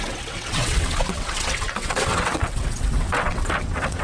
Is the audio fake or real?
fake